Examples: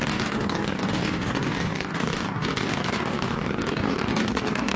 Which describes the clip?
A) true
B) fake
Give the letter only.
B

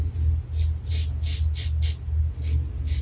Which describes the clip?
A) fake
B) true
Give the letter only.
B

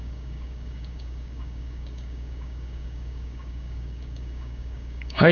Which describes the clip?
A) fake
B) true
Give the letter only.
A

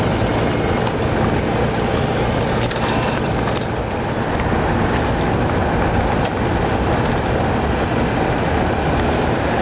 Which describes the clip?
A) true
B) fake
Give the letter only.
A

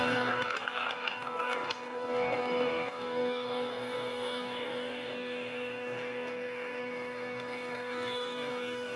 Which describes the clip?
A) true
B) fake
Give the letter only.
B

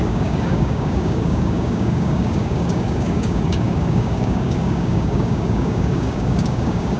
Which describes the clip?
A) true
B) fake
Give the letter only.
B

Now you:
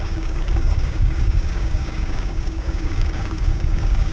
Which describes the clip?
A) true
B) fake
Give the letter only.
B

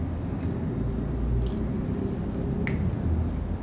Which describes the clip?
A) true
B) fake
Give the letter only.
A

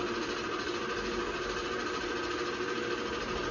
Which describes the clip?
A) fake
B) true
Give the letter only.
B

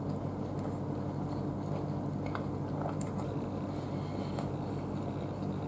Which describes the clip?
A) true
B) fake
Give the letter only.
A